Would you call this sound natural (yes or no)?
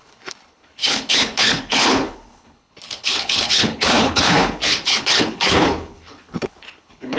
no